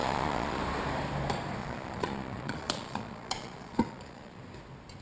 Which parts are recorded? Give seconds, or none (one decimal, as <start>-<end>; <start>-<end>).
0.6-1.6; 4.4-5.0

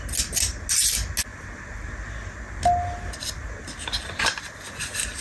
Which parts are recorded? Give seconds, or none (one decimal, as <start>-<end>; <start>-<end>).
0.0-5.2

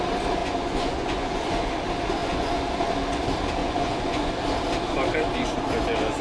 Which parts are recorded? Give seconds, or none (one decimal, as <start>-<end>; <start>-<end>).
0.0-0.4; 1.7-2.2; 3.2-3.6; 4.3-6.2

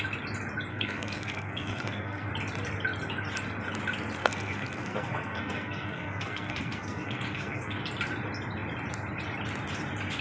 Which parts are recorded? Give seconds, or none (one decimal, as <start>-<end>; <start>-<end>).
0.0-0.7; 2.3-4.2; 7.8-10.2

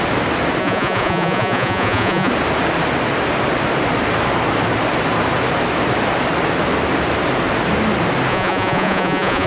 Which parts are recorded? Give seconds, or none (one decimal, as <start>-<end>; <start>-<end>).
0.0-0.6; 2.3-8.3